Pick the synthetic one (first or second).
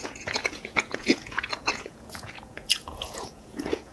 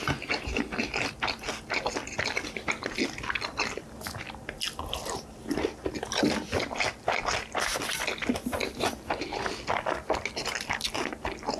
first